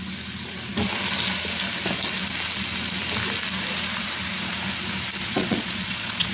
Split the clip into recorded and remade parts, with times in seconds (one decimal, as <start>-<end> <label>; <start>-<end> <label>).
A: 0.0-5.2 recorded; 5.2-6.3 remade